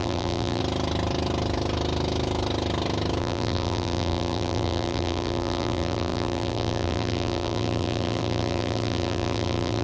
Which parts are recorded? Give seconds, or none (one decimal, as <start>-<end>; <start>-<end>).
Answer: 0.6-3.2